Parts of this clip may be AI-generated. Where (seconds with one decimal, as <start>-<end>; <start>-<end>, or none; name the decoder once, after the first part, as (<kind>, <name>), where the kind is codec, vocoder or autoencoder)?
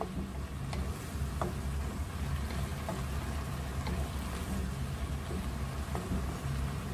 none